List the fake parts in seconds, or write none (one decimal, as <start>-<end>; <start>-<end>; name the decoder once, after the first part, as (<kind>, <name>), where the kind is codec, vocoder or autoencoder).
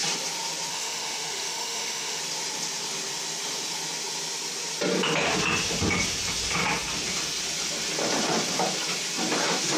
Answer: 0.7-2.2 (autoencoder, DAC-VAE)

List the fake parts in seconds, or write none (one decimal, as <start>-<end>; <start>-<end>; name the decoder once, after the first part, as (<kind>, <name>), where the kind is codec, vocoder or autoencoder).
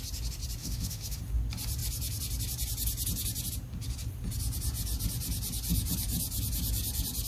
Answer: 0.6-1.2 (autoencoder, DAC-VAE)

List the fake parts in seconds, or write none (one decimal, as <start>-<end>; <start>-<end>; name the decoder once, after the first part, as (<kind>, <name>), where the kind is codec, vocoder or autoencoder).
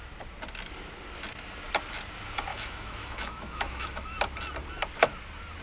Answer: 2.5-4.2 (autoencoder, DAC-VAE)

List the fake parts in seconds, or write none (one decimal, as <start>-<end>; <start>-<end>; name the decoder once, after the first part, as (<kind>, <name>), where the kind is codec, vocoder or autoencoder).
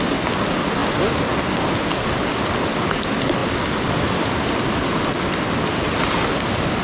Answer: none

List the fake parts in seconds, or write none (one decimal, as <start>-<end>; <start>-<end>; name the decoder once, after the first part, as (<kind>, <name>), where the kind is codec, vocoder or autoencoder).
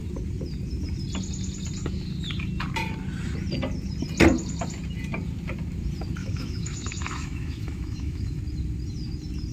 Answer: 6.2-8.4 (autoencoder, DAC-VAE)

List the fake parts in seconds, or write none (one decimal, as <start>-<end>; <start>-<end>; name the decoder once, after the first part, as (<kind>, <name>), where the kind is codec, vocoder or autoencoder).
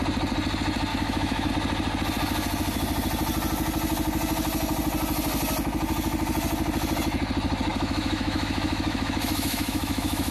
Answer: 0.9-1.5 (autoencoder, DAC-VAE); 7.7-10.3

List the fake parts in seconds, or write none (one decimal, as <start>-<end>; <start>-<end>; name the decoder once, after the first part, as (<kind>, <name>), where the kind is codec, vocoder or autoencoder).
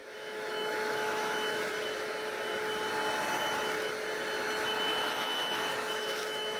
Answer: 0.0-1.7 (autoencoder, DAC-VAE); 4.9-6.6